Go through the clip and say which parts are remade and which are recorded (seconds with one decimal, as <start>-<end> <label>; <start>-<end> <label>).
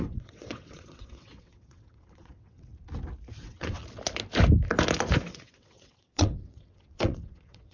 0.0-2.7 remade; 2.7-3.3 recorded; 3.3-3.8 remade; 3.8-5.3 recorded; 5.3-7.7 remade